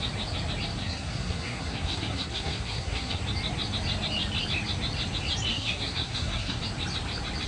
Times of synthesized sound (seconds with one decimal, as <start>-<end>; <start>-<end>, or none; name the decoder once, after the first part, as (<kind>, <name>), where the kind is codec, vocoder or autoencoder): 0.8-3.2 (codec, SNAC); 5.5-6.6

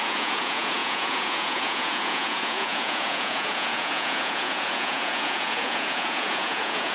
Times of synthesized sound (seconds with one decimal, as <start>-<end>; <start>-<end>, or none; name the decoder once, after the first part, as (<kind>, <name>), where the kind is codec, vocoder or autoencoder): 0.0-6.9 (vocoder, Vocos)

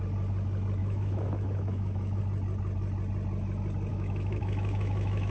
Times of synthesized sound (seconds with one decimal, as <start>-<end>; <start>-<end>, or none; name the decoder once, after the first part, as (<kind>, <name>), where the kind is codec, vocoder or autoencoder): 0.8-2.2 (autoencoder, DAC-VAE); 3.9-5.3